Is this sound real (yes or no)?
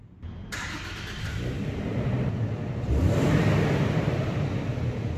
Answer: yes